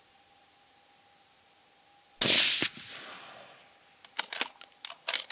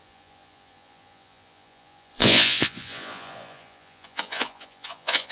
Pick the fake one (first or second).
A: second